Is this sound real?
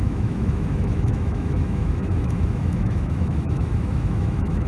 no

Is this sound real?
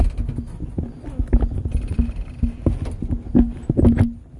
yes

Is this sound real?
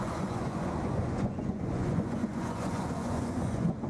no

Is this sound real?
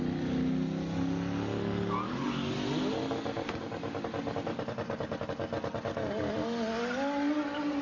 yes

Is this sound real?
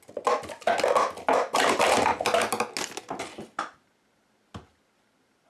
yes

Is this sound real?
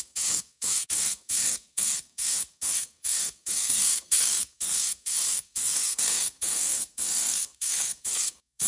no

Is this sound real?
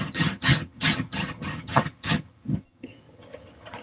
no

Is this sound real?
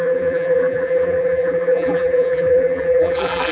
no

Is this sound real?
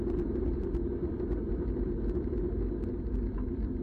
no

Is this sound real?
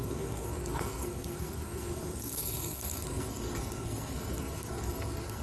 no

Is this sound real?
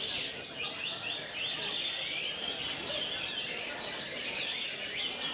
yes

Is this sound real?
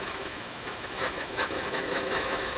no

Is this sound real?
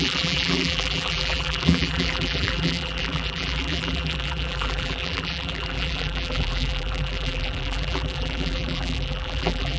no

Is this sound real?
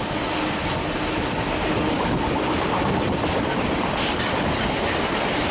yes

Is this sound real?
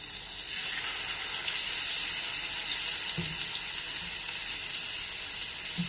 yes